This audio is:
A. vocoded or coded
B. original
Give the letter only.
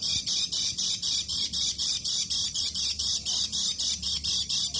B